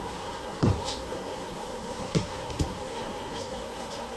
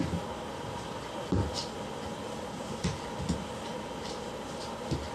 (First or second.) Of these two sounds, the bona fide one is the second